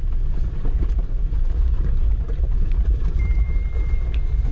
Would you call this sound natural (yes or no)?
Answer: no